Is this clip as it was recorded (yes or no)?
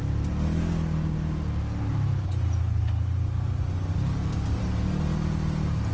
yes